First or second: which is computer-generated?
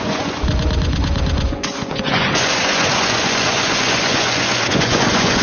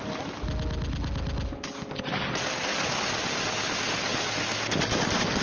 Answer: first